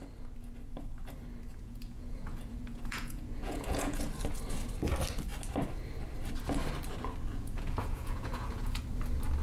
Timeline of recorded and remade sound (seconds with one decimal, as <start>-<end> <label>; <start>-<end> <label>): 0.0-1.5 recorded; 1.5-4.0 remade; 4.0-7.3 recorded; 7.3-8.8 remade; 8.8-9.4 recorded